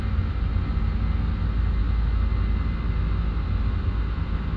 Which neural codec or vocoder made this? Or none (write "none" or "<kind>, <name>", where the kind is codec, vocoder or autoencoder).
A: none